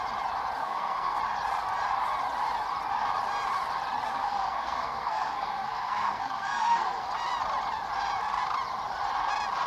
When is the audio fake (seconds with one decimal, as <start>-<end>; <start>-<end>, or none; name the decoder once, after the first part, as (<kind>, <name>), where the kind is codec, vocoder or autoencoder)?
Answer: 0.6-1.2 (codec, SNAC); 4.1-7.1